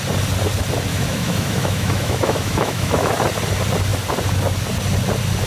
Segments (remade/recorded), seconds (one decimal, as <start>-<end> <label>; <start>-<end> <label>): 0.0-0.9 recorded; 0.9-3.1 remade; 3.1-5.5 recorded